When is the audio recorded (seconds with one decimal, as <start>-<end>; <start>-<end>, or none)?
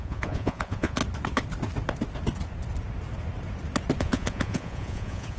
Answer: 1.0-4.0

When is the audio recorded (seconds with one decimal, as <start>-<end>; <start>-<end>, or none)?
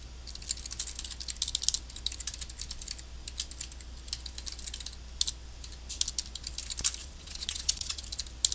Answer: 0.0-7.0; 8.0-8.5